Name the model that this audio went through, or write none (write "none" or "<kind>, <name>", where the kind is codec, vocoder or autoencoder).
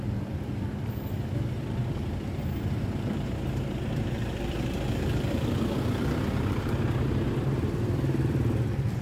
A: vocoder, BigVGAN v2